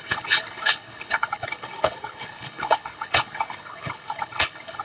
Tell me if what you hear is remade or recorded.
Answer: remade